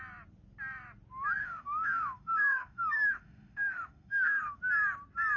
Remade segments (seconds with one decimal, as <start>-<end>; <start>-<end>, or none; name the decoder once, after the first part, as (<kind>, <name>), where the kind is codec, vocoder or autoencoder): 1.4-4.6 (autoencoder, DAC-VAE)